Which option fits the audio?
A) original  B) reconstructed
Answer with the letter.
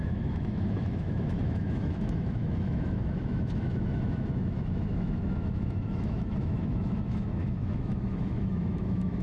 B